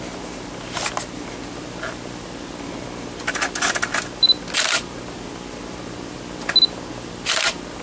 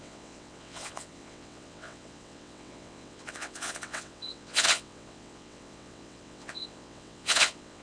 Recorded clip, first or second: first